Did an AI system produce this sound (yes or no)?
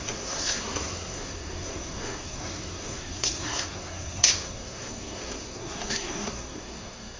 yes